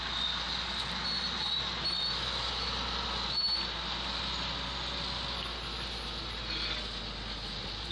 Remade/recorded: recorded